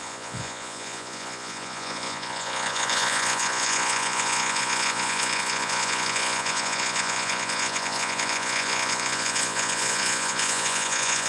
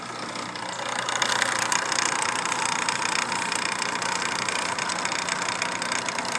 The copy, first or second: first